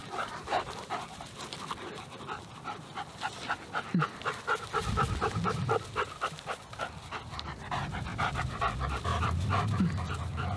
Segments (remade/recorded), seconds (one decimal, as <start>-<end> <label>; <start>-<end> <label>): 0.0-1.4 remade; 1.4-8.1 recorded; 8.1-8.7 remade; 8.7-10.6 recorded